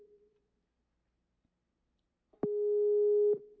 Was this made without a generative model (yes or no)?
yes